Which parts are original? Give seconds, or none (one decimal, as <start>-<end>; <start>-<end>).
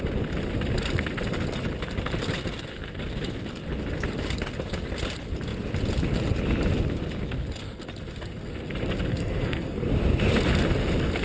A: 0.0-9.1; 9.9-11.2